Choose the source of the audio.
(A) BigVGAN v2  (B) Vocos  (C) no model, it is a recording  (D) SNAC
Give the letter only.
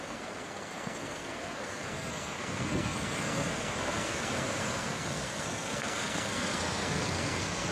D